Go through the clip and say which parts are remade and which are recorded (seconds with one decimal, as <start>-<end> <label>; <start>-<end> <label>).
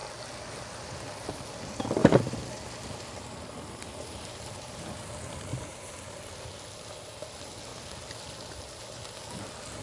0.0-2.0 recorded; 2.0-5.1 remade; 5.1-5.5 recorded; 5.5-6.2 remade; 6.2-9.8 recorded